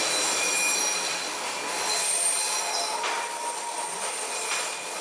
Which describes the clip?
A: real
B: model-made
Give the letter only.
A